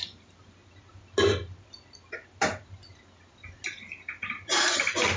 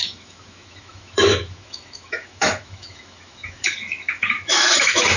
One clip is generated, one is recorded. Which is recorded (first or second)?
first